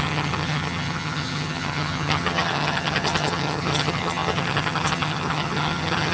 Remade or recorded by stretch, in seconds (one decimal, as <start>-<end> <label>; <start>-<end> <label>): 0.0-6.1 remade